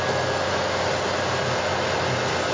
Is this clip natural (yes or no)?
yes